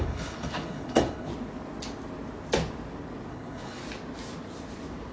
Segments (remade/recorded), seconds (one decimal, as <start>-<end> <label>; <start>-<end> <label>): 0.0-1.3 remade; 1.3-3.3 recorded; 3.3-3.8 remade; 3.8-5.1 recorded